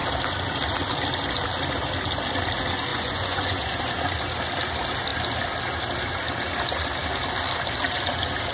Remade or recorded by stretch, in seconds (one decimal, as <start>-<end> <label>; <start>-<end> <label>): 0.0-2.9 recorded; 2.9-3.8 remade; 3.8-8.5 recorded

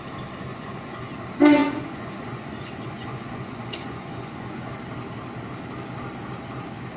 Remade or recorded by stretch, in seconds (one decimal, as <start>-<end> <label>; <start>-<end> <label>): 0.0-0.5 recorded; 0.5-1.1 remade; 1.1-1.6 recorded; 1.6-4.7 remade; 4.7-7.0 recorded

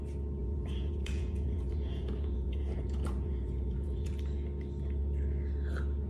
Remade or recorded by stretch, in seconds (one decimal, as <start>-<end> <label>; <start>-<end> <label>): 0.0-0.4 recorded; 0.4-4.1 remade; 4.1-6.1 recorded

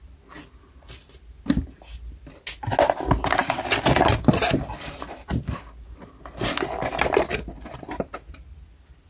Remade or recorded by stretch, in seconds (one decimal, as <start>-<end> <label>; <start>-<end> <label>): 0.0-9.1 recorded

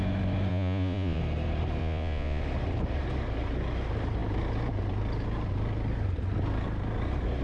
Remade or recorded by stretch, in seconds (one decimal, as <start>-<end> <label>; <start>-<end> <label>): 0.0-0.5 recorded; 0.5-1.2 remade; 1.2-1.8 recorded; 1.8-2.4 remade; 2.4-7.4 recorded

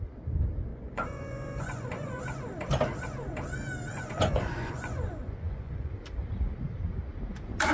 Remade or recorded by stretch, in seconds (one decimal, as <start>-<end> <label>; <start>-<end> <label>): 0.0-0.7 recorded; 0.7-2.2 remade; 2.2-3.9 recorded; 3.9-5.9 remade; 5.9-7.7 recorded

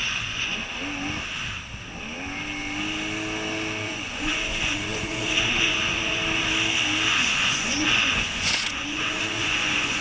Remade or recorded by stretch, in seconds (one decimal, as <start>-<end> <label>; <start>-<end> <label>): 0.0-0.7 remade; 0.7-3.8 recorded; 3.8-6.2 remade; 6.2-7.1 recorded; 7.1-10.0 remade